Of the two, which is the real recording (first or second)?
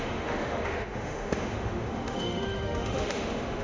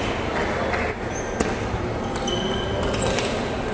second